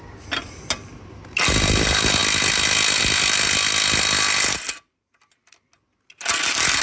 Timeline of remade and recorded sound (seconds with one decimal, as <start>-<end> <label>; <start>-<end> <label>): 0.0-6.8 recorded